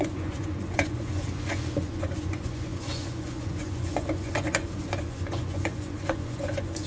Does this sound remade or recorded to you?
remade